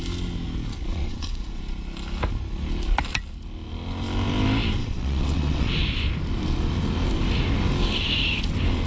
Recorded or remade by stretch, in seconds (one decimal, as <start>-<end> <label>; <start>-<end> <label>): 0.0-0.9 recorded; 0.9-1.6 remade; 1.6-4.8 recorded; 4.8-5.7 remade; 5.7-8.9 recorded